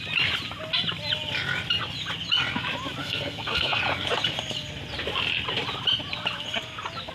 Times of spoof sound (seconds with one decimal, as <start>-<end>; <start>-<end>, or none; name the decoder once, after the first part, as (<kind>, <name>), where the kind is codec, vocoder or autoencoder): 3.0-3.8 (codec, SNAC)